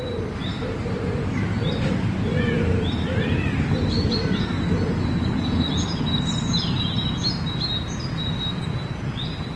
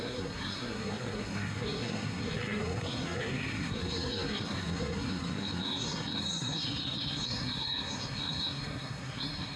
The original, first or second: first